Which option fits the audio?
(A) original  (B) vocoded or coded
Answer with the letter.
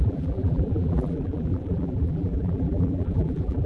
B